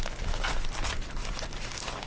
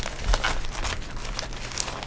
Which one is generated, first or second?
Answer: first